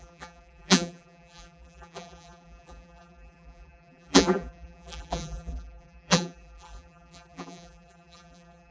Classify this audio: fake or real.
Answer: fake